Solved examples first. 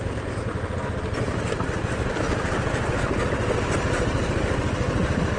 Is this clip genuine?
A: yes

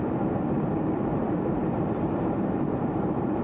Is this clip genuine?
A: no